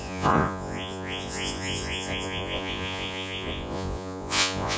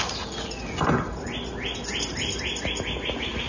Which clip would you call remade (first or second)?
first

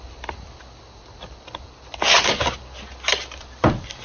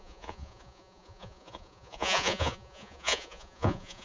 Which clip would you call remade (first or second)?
second